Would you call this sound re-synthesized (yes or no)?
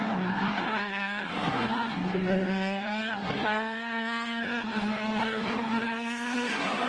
yes